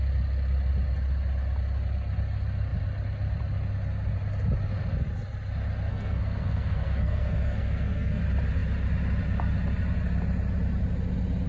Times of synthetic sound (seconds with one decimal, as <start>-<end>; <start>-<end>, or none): 5.9-8.2

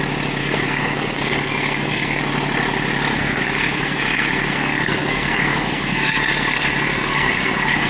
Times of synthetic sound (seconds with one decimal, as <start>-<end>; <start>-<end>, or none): 0.4-2.2; 3.1-7.9

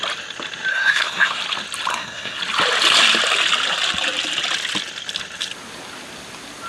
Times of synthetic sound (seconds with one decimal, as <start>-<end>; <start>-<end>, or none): 0.7-1.4; 1.9-2.4

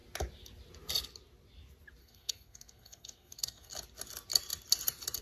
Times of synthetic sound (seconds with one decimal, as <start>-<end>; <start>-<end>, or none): 2.0-3.7

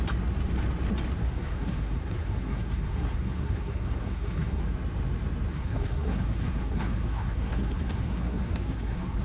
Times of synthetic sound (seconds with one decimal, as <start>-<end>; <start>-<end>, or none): 1.2-4.6; 5.5-9.2